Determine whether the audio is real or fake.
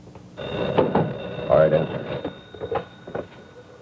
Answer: real